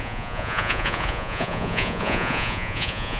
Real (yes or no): no